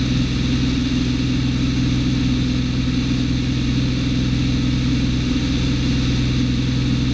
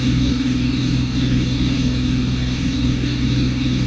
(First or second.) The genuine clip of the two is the first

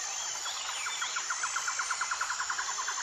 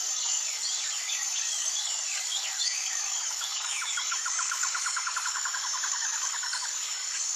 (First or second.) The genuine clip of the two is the first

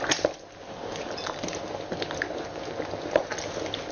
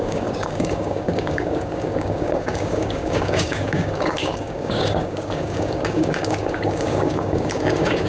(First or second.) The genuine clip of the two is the first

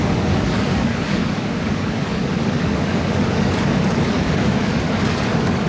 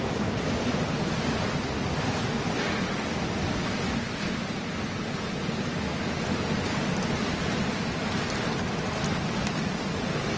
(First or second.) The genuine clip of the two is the second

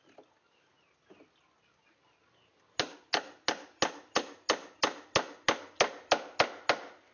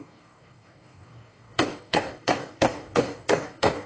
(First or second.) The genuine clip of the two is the first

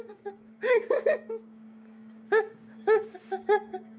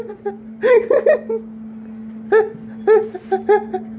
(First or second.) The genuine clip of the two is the second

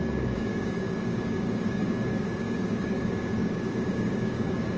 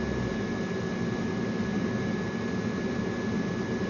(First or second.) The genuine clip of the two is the second